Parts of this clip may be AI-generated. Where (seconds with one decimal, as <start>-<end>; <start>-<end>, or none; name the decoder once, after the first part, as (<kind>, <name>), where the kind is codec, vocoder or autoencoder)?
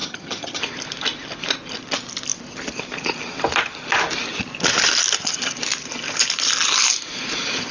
0.0-0.6 (vocoder, HiFi-GAN)